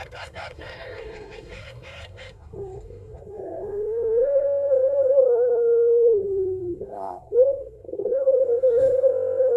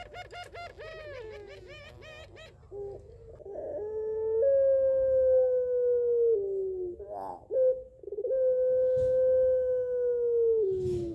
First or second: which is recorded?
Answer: second